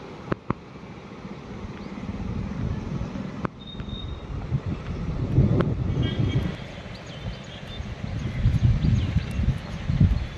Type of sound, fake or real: real